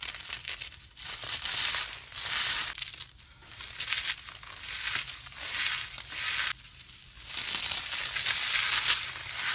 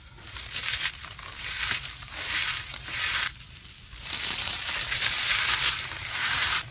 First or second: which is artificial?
second